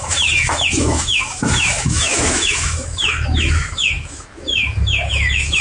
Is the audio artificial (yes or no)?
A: yes